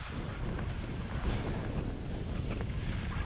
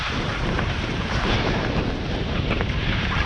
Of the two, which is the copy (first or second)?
second